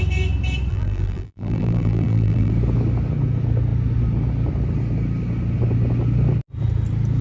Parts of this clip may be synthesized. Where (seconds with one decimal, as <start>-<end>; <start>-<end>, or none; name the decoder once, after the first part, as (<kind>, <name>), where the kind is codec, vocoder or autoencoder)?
0.7-2.5 (vocoder, BigVGAN v2)